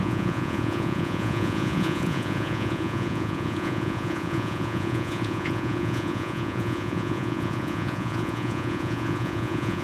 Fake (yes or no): yes